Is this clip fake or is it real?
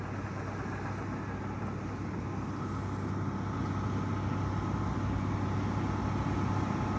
real